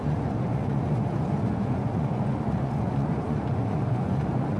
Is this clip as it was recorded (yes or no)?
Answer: no